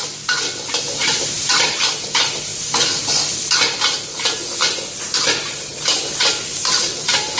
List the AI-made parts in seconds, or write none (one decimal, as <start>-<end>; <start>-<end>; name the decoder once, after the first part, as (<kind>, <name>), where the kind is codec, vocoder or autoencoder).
1.0-1.9 (vocoder, BigVGAN v2); 6.5-7.4